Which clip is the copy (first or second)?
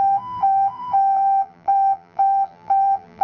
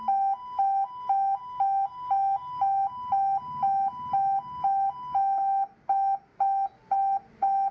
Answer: first